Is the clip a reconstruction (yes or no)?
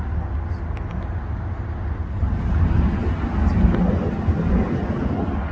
no